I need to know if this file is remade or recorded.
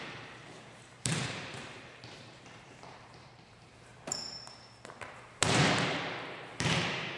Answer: remade